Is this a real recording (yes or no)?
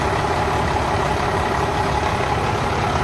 no